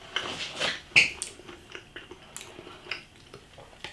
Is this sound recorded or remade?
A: recorded